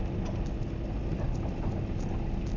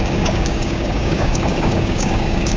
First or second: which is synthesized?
second